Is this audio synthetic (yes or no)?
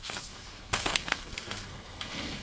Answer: yes